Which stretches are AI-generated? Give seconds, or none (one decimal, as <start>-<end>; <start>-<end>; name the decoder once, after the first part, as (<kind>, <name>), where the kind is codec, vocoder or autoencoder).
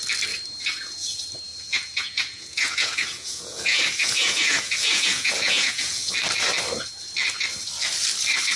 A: 1.5-6.1 (vocoder, Vocos)